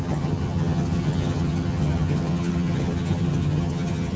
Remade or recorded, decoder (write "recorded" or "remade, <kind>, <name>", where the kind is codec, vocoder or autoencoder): remade, vocoder, HiFi-GAN